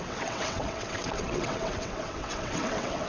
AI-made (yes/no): yes